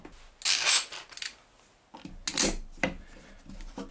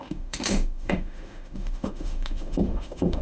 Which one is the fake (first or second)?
second